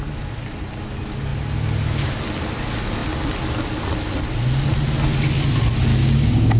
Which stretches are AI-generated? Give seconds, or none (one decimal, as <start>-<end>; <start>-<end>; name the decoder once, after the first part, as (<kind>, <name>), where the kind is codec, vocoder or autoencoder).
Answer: 5.9-6.6 (codec, DAC)